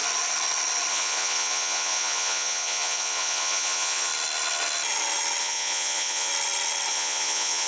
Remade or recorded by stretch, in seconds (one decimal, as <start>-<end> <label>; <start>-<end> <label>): 0.0-0.9 recorded; 0.9-4.1 remade; 4.1-5.4 recorded; 5.4-6.3 remade; 6.3-6.9 recorded; 6.9-7.7 remade